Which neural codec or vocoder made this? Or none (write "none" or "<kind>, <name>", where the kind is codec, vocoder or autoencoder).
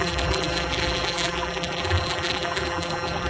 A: vocoder, BigVGAN v2